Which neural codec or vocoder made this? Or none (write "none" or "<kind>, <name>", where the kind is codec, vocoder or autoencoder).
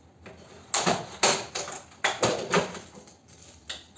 none